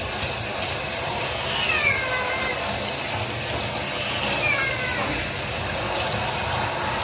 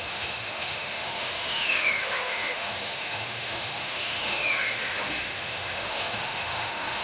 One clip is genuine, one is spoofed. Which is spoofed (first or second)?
second